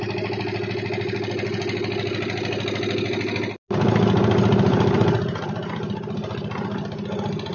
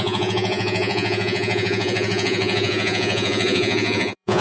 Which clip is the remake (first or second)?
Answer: second